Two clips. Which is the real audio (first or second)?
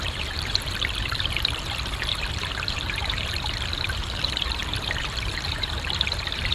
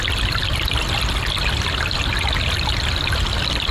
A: second